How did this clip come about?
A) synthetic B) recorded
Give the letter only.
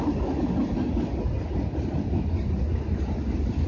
B